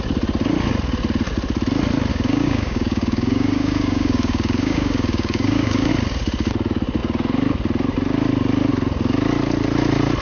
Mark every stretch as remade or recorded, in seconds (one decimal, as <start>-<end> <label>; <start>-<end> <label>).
0.0-2.1 recorded; 2.1-5.9 remade; 5.9-10.2 recorded

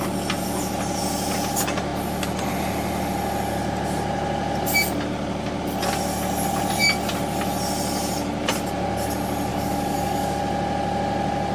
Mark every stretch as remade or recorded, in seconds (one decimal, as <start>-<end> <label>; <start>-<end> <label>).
0.0-9.5 recorded; 9.5-10.4 remade; 10.4-11.5 recorded

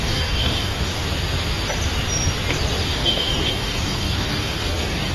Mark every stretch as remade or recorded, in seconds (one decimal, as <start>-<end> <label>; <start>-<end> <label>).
0.0-0.9 remade; 0.9-2.8 recorded; 2.8-5.1 remade

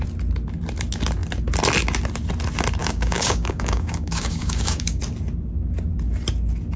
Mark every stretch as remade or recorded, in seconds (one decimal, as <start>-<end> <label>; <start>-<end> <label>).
0.0-2.8 recorded; 2.8-5.0 remade; 5.0-6.8 recorded

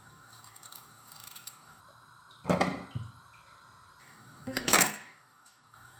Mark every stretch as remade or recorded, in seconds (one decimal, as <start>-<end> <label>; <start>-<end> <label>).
0.0-1.8 remade; 1.8-4.0 recorded; 4.0-6.0 remade

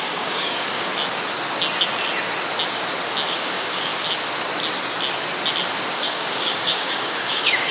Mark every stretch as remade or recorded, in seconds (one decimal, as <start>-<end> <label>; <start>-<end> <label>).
0.0-0.9 remade; 0.9-3.3 recorded; 3.3-3.9 remade; 3.9-5.9 recorded; 5.9-7.7 remade

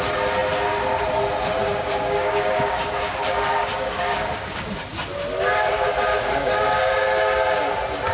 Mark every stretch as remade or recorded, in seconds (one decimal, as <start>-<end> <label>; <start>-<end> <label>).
0.0-1.6 recorded; 1.6-4.8 remade; 4.8-6.1 recorded; 6.1-6.9 remade; 6.9-8.1 recorded

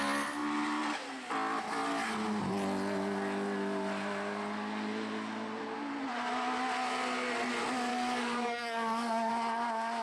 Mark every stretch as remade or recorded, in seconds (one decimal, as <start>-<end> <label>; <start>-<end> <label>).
0.0-7.9 recorded; 7.9-9.3 remade; 9.3-10.0 recorded